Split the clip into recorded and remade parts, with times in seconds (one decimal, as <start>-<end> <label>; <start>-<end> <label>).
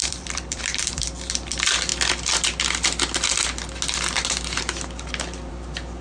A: 0.0-1.3 remade; 1.3-6.0 recorded